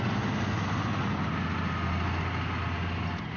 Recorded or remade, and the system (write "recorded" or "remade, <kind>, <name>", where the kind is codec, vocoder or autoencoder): recorded